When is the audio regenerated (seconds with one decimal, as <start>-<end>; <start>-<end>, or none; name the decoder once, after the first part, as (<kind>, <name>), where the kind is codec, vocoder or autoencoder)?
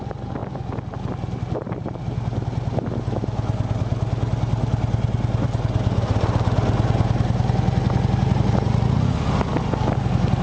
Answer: none